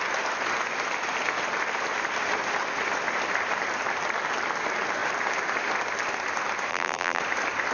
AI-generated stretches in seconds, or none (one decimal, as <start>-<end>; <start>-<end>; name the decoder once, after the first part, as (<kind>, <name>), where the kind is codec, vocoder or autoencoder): 6.7-7.2 (vocoder, BigVGAN v2)